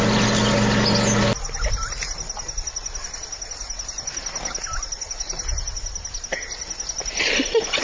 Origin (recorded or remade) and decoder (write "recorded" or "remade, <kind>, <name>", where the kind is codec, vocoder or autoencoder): recorded